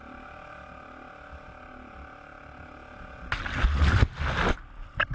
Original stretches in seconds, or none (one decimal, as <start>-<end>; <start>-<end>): 0.0-5.1